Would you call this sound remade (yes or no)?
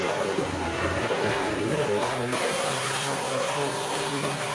yes